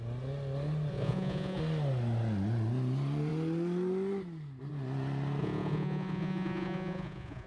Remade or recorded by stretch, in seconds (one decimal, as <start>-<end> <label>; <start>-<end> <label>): 0.0-0.9 recorded; 0.9-1.6 remade; 1.6-5.4 recorded; 5.4-7.5 remade